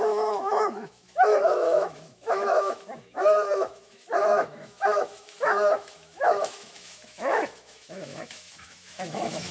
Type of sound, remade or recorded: remade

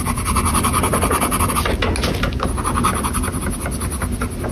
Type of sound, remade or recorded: recorded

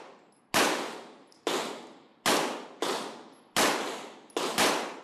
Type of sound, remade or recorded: recorded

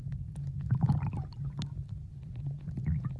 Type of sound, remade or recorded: recorded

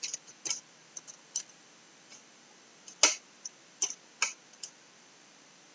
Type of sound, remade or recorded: recorded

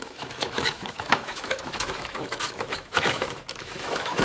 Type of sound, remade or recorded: remade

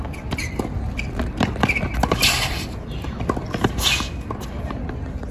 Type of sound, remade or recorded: recorded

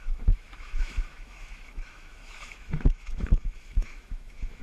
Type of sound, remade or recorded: remade